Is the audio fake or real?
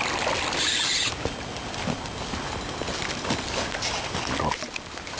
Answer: real